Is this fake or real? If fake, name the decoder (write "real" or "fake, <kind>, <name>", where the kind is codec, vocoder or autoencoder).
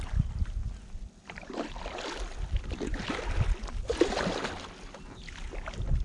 real